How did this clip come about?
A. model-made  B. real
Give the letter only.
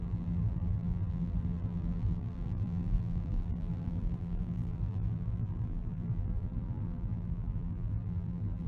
A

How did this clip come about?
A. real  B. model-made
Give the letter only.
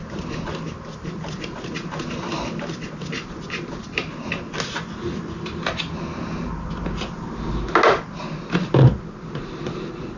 A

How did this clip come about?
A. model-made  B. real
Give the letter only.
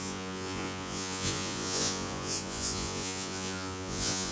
A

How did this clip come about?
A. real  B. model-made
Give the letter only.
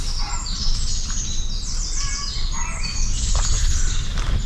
A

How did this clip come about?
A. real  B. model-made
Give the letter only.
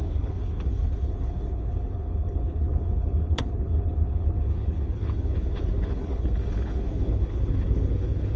B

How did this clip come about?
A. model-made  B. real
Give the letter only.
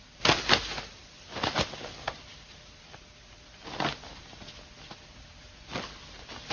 B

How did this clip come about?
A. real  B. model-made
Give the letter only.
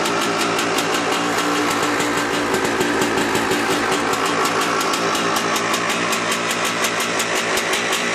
A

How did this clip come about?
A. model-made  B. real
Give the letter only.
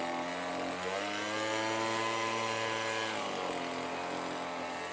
B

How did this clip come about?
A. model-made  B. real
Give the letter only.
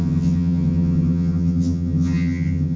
A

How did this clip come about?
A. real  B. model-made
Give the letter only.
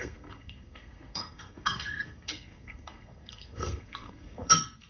B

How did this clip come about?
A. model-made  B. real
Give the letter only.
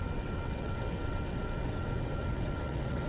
A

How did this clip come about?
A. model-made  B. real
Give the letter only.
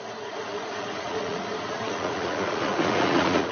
A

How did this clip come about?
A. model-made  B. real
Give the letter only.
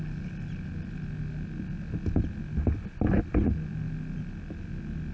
B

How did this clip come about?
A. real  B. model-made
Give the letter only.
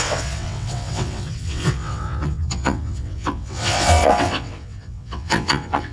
B